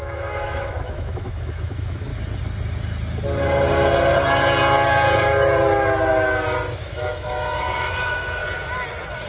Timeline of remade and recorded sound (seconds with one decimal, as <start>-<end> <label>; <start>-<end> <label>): 0.0-2.1 remade; 2.1-6.8 recorded; 6.8-8.4 remade; 8.4-9.3 recorded